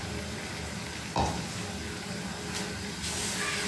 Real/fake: real